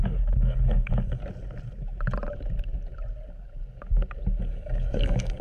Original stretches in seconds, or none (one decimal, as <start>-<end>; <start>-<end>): 1.2-4.4